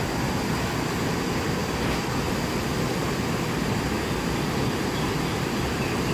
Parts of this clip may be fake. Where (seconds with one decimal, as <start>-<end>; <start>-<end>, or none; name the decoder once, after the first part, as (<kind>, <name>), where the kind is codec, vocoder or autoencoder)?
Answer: none